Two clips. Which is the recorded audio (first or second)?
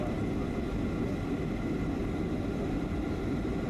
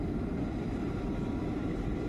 first